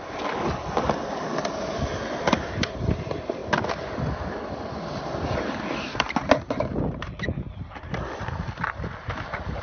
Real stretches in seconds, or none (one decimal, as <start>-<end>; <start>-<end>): 0.0-9.6